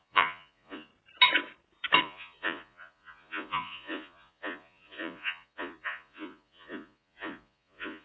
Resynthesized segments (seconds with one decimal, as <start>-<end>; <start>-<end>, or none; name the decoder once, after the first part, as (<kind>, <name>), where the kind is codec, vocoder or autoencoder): 0.0-0.9 (vocoder, Vocos); 2.0-8.0